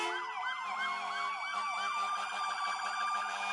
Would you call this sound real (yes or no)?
yes